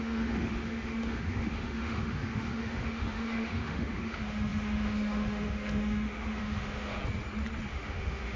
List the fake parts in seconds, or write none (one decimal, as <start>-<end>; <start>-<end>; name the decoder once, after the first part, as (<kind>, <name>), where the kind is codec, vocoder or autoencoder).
0.0-7.0 (autoencoder, DAC-VAE); 7.7-8.4